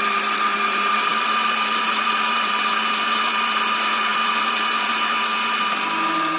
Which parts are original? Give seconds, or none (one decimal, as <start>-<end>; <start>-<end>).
none